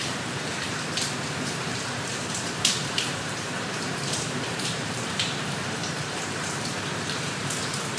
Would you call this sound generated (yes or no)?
yes